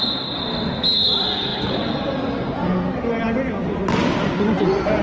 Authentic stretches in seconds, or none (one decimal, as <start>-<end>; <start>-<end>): 0.0-5.0